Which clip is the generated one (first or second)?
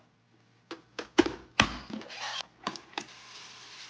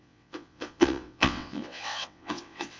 second